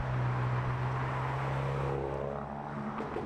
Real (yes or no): yes